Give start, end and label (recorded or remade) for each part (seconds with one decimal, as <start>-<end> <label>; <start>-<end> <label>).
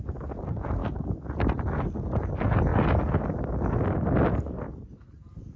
0.0-5.6 recorded